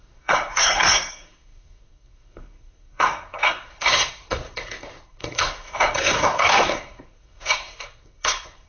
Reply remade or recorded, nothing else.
remade